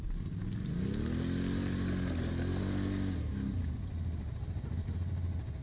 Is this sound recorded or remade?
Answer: recorded